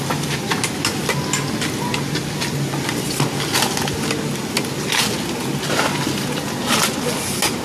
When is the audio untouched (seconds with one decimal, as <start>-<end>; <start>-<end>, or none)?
0.0-7.6